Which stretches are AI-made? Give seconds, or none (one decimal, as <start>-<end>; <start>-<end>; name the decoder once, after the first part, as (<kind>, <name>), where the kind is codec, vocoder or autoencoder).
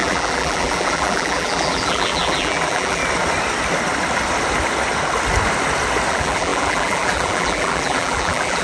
0.0-3.0 (vocoder, BigVGAN v2); 6.1-8.6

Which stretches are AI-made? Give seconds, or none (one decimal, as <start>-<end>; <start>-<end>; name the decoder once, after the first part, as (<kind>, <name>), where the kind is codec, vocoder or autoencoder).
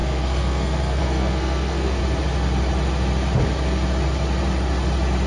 0.0-2.0 (codec, SNAC)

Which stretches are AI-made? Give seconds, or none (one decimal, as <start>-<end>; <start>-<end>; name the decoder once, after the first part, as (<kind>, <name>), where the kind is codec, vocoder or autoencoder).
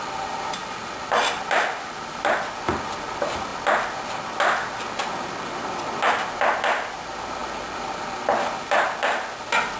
none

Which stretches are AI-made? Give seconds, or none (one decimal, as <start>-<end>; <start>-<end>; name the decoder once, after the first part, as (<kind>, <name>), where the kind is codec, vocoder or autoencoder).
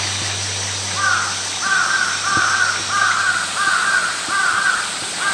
none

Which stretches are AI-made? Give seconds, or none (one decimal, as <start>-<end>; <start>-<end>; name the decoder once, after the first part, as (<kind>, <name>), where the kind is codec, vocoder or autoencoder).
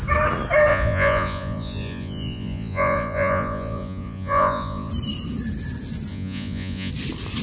0.7-4.9 (vocoder, Vocos); 6.1-6.9